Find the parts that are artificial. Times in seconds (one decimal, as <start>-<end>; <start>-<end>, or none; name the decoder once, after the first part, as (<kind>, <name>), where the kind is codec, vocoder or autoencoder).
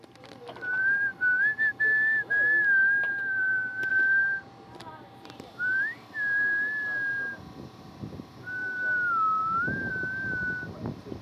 none